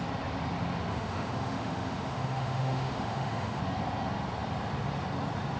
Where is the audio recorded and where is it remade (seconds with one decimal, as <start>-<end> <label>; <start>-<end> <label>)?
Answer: 0.0-0.9 recorded; 0.9-3.6 remade; 3.6-5.6 recorded